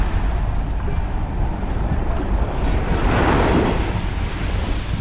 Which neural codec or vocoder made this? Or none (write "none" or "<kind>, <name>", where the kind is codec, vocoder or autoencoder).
none